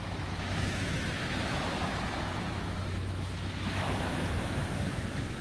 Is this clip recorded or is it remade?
remade